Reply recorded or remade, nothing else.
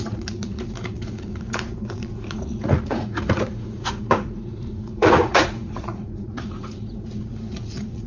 remade